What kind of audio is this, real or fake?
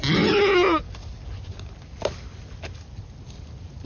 real